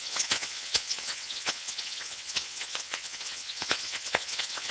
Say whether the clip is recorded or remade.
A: remade